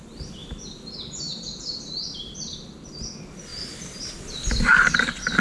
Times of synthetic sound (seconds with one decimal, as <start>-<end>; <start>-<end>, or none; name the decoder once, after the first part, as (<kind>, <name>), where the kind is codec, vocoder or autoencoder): 0.4-2.9 (vocoder, BigVGAN v2); 4.7-5.4

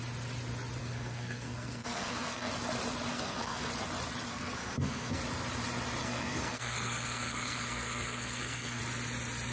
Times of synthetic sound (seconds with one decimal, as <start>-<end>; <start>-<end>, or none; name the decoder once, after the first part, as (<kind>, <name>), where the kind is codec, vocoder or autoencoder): 0.8-2.5 (codec, SNAC); 3.1-3.7; 4.3-5.2; 6.0-8.8